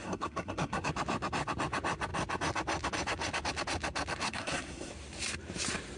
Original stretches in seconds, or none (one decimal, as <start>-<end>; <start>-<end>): 0.9-4.2; 4.9-6.0